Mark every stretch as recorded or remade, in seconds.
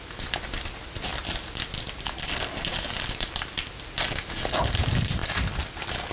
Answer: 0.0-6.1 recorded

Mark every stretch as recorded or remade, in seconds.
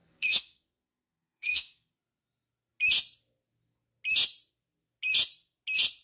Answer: 0.0-1.9 remade; 1.9-6.0 recorded